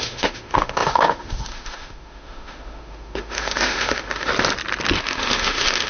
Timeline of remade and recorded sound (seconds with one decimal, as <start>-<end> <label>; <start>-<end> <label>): 0.0-4.3 remade; 4.3-5.0 recorded; 5.0-5.9 remade